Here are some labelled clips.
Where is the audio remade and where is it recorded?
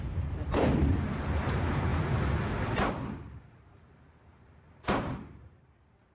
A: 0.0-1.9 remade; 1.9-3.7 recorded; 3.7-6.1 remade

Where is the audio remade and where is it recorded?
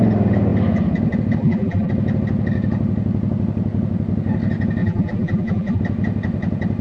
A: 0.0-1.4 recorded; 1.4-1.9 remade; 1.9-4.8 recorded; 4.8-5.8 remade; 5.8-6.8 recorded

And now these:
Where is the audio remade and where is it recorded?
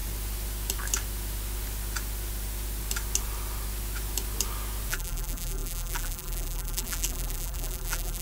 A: 0.0-4.9 recorded; 4.9-8.2 remade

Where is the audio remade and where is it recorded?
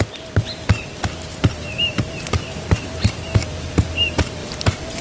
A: 0.0-1.3 recorded; 1.3-2.4 remade; 2.4-4.4 recorded; 4.4-5.0 remade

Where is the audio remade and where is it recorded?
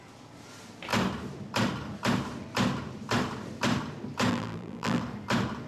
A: 0.0-4.3 recorded; 4.3-5.0 remade; 5.0-5.7 recorded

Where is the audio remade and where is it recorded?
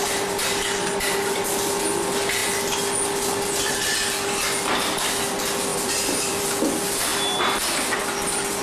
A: 0.0-5.7 recorded; 5.7-6.4 remade; 6.4-8.6 recorded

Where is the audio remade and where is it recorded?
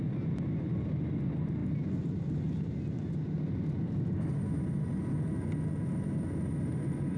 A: 0.0-1.6 recorded; 1.6-2.2 remade; 2.2-7.2 recorded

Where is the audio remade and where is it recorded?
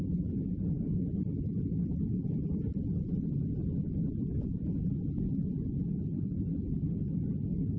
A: 0.0-2.7 recorded; 2.7-7.2 remade; 7.2-7.8 recorded